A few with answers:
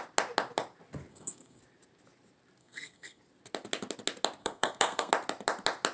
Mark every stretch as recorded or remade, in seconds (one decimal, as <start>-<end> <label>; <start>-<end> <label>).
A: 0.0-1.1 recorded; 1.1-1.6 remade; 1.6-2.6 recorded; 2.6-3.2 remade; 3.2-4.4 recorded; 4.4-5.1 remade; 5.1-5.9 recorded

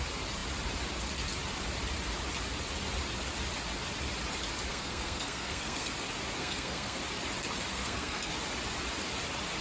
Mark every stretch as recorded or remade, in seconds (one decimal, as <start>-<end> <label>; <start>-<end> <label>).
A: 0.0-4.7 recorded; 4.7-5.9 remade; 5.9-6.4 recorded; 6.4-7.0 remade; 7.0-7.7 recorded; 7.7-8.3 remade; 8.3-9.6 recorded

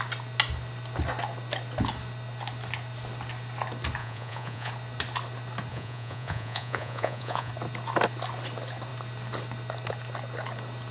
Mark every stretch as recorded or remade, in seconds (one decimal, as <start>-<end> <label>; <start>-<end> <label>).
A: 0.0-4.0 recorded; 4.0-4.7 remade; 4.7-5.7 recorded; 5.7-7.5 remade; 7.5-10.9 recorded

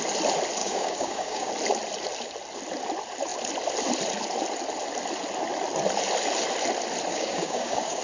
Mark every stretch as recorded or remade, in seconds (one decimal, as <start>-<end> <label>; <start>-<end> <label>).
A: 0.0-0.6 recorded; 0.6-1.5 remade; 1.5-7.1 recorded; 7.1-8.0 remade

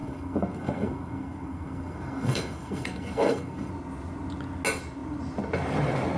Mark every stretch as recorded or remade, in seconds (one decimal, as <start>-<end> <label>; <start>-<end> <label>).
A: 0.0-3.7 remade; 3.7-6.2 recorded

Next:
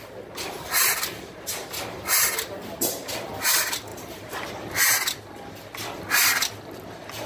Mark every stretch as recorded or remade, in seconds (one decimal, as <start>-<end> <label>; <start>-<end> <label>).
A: 0.0-3.9 recorded; 3.9-4.5 remade; 4.5-7.3 recorded

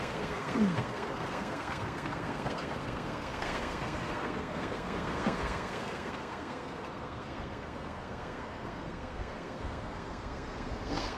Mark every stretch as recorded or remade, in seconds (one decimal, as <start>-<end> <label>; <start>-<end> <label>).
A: 0.0-11.2 remade